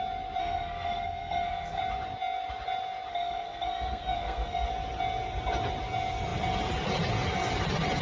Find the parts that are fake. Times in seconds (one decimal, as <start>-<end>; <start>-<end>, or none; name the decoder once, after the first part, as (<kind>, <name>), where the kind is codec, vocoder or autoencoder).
0.4-1.8 (codec, SNAC); 3.1-4.7

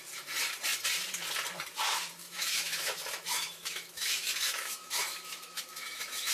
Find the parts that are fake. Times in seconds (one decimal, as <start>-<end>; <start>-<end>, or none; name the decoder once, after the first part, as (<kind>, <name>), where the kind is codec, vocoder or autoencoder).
2.2-6.3 (autoencoder, DAC-VAE)

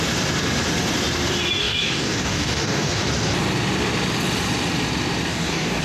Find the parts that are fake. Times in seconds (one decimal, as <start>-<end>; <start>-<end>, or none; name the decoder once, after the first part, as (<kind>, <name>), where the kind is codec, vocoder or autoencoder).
1.6-3.0 (codec, DAC); 5.3-5.8

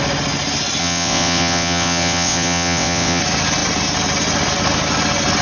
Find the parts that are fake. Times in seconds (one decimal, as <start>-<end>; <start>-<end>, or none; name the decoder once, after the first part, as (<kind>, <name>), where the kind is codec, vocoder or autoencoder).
0.8-3.2 (vocoder, WaveNeXt)